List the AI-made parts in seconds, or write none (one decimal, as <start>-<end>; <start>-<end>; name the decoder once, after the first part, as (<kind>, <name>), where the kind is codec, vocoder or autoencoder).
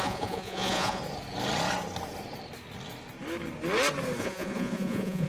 0.0-1.0 (vocoder, Vocos); 4.2-5.3